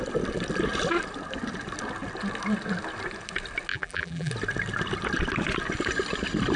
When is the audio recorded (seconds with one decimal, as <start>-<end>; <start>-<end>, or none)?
0.0-3.7; 4.3-6.6